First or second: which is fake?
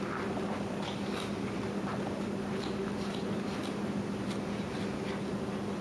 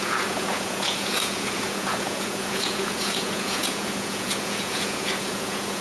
second